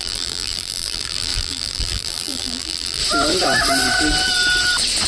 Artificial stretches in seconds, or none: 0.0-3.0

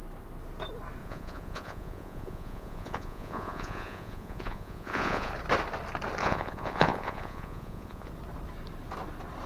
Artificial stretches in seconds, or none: 1.0-5.3; 6.2-8.1

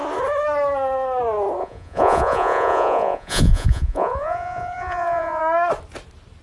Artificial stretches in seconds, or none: 1.6-5.4

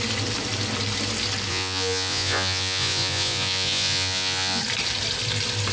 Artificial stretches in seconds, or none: 1.5-4.6

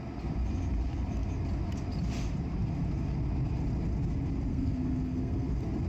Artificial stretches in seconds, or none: 4.5-5.5

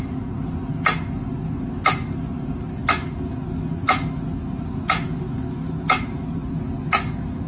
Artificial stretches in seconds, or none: none

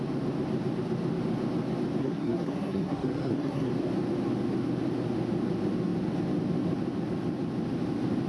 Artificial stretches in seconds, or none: 2.0-3.7